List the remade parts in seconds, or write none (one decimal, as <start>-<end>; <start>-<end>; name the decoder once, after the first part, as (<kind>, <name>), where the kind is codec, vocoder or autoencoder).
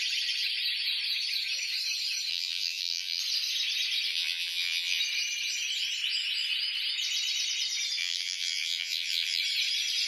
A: 2.3-3.2 (vocoder, BigVGAN v2); 4.1-5.0; 8.0-9.4